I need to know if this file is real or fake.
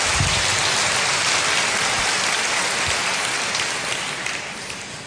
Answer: real